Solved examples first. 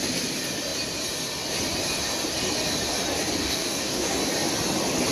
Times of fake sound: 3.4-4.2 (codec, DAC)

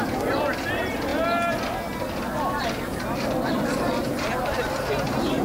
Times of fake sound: 0.0-1.1 (vocoder, BigVGAN v2); 4.3-5.4

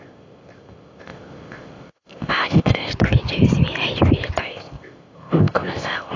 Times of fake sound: 0.0-2.9 (codec, ZipCodec); 4.4-6.2